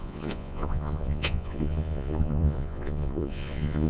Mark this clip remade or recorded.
remade